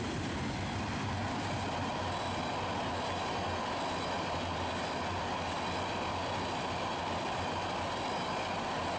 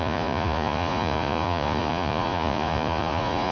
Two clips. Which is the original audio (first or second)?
first